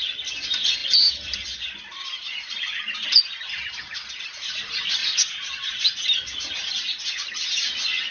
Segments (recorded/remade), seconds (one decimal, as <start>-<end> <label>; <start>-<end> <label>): 0.0-8.1 recorded